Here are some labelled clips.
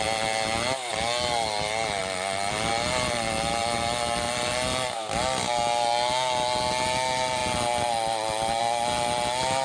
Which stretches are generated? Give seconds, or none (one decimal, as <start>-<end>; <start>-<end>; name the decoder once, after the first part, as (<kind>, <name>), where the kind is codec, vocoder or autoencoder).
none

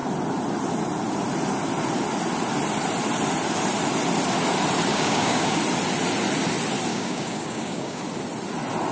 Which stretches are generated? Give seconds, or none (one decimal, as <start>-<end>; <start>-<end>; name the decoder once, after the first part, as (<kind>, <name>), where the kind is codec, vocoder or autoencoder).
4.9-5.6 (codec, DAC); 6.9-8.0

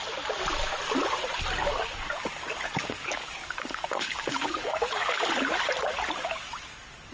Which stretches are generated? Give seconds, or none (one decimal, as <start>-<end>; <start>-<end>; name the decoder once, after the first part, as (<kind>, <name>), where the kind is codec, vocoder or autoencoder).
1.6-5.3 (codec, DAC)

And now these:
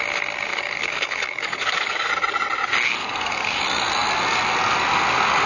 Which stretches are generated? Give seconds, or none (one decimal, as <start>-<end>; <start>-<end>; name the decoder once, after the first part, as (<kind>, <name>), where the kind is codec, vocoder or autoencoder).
0.5-2.1 (codec, DAC); 3.0-3.6

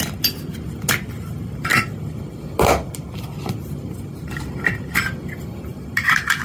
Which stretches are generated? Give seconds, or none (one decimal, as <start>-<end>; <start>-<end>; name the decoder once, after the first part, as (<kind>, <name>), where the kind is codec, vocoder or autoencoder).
none